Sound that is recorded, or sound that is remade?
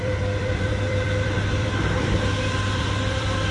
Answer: remade